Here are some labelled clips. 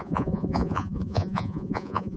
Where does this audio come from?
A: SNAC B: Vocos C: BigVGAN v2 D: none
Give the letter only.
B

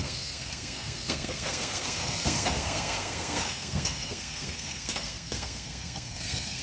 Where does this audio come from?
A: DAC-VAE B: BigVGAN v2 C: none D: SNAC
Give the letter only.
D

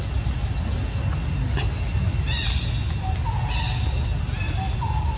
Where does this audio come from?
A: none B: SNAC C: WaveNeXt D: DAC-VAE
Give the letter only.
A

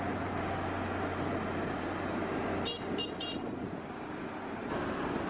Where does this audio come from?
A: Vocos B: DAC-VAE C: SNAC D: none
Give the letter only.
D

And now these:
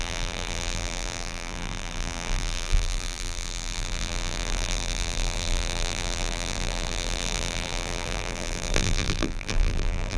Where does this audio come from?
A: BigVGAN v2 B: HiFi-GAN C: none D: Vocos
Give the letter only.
A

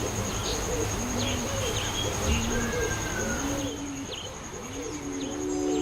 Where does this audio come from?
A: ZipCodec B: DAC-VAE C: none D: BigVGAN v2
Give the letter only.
C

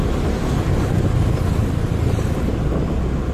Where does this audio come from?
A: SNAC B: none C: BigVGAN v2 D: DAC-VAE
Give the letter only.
B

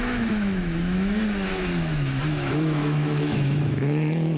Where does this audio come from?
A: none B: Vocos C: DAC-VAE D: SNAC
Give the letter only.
C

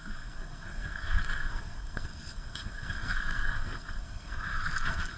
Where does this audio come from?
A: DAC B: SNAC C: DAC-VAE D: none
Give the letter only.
B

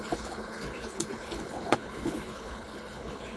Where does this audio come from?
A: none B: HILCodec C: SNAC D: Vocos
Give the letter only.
B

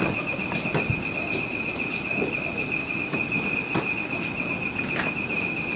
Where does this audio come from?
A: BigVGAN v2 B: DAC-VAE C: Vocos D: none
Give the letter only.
D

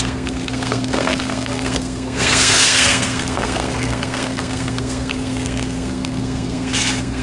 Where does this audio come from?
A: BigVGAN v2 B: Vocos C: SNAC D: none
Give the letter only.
C